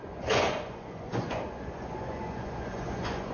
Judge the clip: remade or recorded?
remade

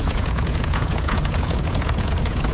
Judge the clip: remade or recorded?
remade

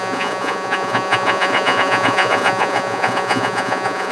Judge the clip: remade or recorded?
remade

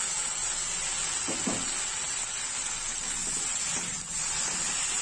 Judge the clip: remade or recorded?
recorded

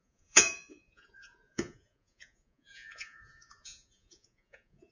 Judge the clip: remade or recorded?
remade